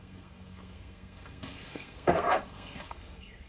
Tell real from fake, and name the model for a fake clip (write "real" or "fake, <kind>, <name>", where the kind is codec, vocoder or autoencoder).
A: fake, codec, SNAC